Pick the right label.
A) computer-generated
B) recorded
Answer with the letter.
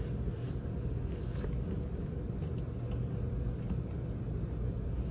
B